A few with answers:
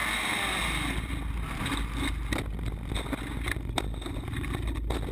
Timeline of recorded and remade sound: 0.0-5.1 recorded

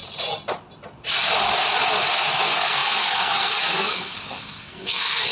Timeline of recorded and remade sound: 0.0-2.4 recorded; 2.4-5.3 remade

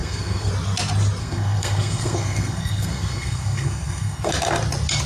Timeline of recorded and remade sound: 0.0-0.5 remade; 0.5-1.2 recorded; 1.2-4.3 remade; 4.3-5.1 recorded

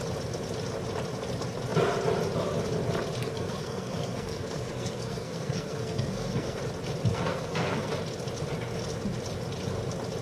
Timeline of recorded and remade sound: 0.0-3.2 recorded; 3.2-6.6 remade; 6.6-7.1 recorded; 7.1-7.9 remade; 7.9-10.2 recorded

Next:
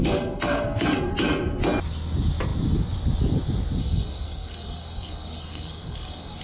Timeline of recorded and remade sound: 0.0-1.1 remade; 1.1-3.8 recorded; 3.8-6.4 remade

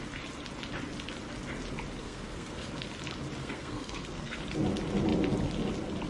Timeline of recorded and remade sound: 0.0-2.0 recorded; 2.0-2.7 remade; 2.7-3.4 recorded; 3.4-4.4 remade; 4.4-6.1 recorded

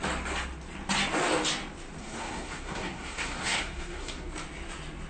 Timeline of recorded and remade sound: 0.0-2.0 recorded; 2.0-4.3 remade; 4.3-5.1 recorded

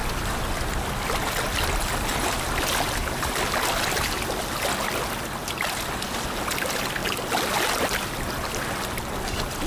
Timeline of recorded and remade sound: 0.0-9.7 recorded